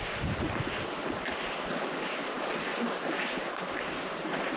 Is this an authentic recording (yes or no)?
yes